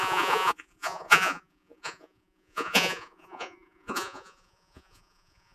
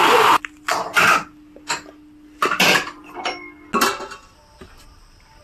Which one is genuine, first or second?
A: second